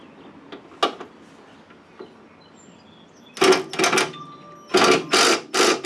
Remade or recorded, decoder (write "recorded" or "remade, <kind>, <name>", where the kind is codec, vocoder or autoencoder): recorded